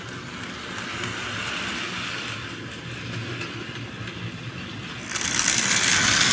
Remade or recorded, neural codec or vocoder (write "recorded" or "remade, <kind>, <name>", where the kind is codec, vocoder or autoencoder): recorded